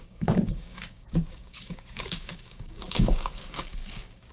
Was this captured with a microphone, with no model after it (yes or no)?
no